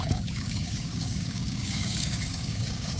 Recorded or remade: remade